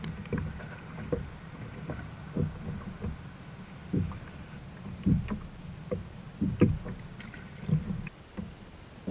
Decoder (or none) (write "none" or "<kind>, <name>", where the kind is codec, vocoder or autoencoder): none